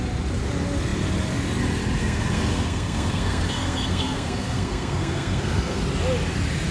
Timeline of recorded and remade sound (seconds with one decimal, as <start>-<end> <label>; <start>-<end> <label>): 0.0-2.0 recorded; 2.0-5.8 remade; 5.8-6.7 recorded